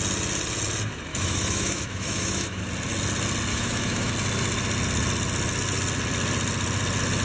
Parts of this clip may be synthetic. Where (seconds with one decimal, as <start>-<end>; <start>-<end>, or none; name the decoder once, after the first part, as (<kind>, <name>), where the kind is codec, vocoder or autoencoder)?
1.1-2.6 (autoencoder, DAC-VAE); 3.5-4.1